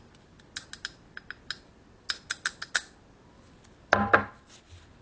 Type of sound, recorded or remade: recorded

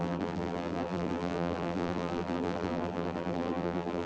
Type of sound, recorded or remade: remade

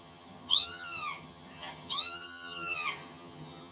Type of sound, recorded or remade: remade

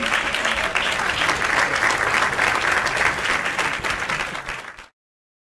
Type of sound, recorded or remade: recorded